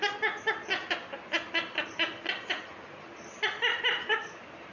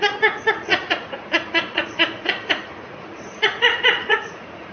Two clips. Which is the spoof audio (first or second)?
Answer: second